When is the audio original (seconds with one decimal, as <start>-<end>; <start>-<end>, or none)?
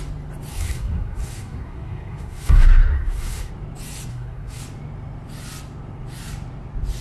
0.0-0.5; 3.5-4.1; 4.6-7.0